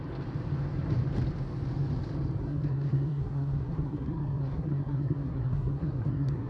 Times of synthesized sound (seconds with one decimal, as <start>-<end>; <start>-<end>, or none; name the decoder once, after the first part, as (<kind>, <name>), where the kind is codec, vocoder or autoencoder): 2.4-6.5 (codec, SNAC)